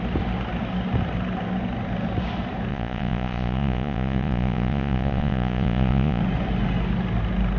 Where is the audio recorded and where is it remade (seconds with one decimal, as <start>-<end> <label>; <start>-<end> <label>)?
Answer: 0.0-2.7 recorded; 2.7-6.2 remade; 6.2-7.6 recorded